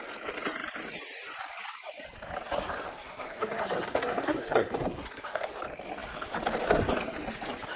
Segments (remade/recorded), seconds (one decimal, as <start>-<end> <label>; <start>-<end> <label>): 0.0-2.9 recorded; 2.9-5.5 remade; 5.5-7.8 recorded